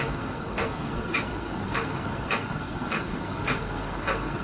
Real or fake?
fake